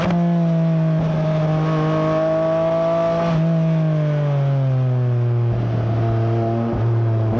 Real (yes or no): yes